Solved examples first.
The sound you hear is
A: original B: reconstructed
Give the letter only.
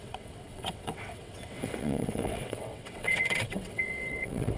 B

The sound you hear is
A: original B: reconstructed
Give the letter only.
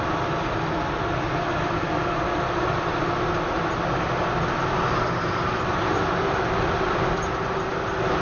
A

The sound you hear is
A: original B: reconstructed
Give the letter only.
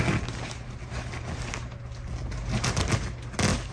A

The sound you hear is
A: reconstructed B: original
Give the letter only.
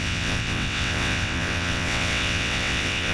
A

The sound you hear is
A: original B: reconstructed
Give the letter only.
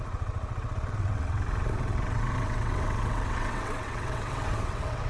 B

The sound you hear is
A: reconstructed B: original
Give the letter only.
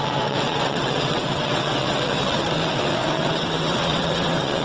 A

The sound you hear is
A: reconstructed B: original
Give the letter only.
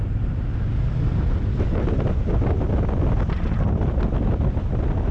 B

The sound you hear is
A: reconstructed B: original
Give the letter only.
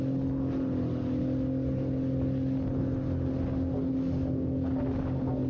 B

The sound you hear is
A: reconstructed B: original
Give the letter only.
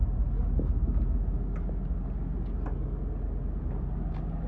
B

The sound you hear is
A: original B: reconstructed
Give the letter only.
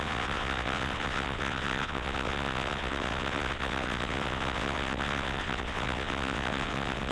B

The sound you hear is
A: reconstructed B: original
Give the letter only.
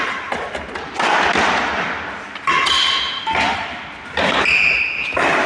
B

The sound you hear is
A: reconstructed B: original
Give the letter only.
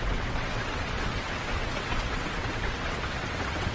A